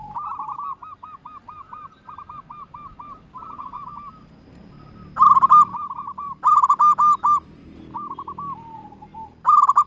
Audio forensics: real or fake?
real